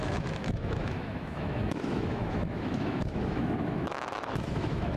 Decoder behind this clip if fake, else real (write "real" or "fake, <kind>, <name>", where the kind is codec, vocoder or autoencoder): fake, autoencoder, DAC-VAE